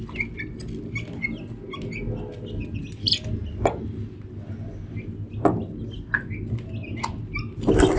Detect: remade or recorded recorded